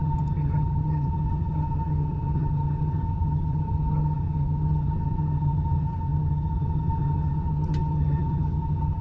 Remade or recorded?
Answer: remade